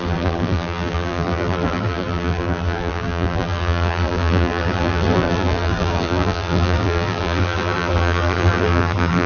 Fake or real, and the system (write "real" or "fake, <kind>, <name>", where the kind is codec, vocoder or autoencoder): fake, vocoder, BigVGAN v2